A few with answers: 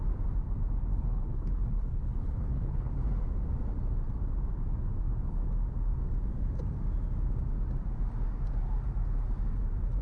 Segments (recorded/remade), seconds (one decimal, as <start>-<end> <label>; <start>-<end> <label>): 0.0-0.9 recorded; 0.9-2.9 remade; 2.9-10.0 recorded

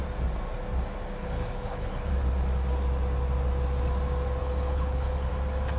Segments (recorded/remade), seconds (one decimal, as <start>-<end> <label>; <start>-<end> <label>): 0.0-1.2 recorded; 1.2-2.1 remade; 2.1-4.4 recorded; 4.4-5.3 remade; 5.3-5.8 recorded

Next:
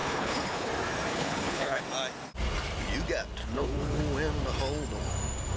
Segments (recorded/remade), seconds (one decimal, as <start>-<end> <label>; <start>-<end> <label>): 0.0-0.7 remade; 0.7-1.1 recorded; 1.1-1.8 remade; 1.8-3.4 recorded; 3.4-4.0 remade; 4.0-5.6 recorded

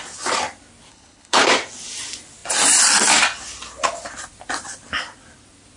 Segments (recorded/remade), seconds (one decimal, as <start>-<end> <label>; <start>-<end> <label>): 0.0-0.9 recorded; 0.9-1.5 remade; 1.5-5.8 recorded

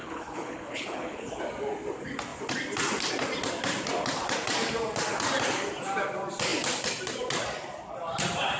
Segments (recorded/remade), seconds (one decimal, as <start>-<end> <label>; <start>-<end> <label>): 0.0-1.4 remade; 1.4-8.6 recorded

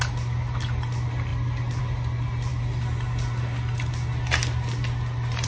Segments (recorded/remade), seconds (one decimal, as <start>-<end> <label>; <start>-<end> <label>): 0.0-5.5 recorded